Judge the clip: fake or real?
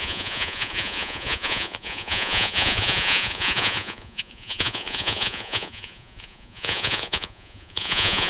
fake